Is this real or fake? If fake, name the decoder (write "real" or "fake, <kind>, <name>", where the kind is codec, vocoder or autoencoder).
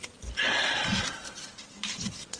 real